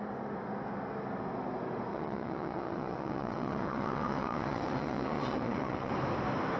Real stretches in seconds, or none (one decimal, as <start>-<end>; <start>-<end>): 0.0-1.9; 5.9-6.6